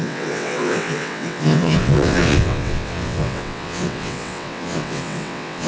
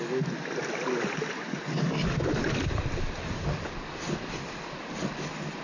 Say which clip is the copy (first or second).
first